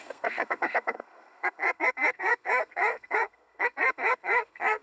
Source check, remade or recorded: remade